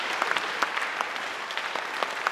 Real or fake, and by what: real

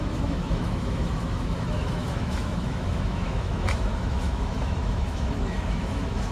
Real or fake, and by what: fake, autoencoder, DAC-VAE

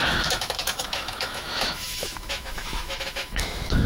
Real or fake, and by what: fake, autoencoder, DAC-VAE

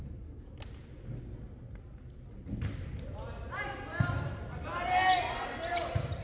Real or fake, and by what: real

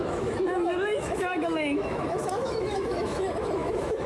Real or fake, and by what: fake, autoencoder, DAC-VAE